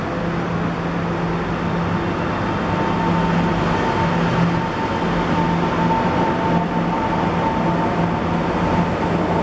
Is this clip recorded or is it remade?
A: recorded